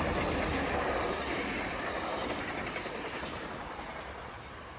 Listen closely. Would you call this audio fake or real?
fake